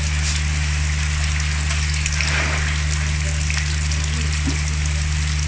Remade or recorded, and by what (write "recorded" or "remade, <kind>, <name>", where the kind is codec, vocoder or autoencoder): recorded